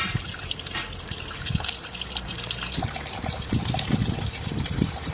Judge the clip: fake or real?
fake